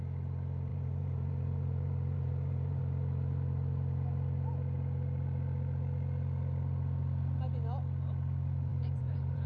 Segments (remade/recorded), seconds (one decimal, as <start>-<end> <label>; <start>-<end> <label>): 0.0-0.7 recorded; 0.7-2.8 remade; 2.8-8.7 recorded; 8.7-9.5 remade